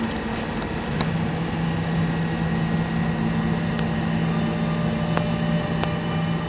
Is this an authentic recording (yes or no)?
yes